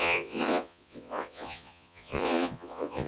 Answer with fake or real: fake